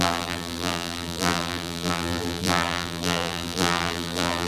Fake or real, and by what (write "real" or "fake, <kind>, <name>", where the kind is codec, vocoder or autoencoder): fake, vocoder, BigVGAN v2